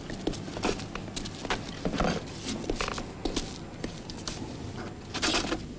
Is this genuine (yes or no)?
yes